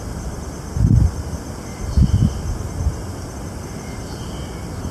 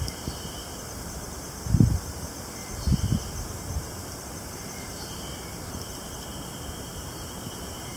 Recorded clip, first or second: first